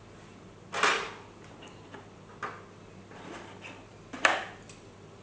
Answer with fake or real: real